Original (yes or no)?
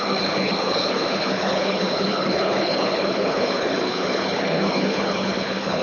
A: no